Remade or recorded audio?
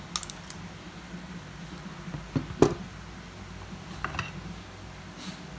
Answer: recorded